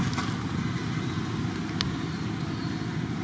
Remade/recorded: recorded